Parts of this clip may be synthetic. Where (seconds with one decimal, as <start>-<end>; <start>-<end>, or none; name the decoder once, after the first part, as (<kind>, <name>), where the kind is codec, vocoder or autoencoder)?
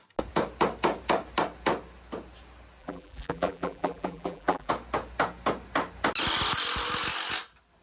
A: 2.8-4.7 (vocoder, BigVGAN v2)